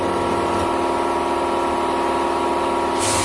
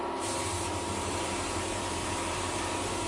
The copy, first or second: second